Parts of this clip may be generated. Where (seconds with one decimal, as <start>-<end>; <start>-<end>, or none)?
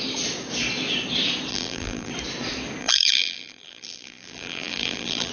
1.5-2.1; 2.8-5.3